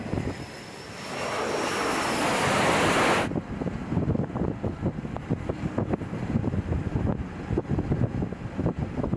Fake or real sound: real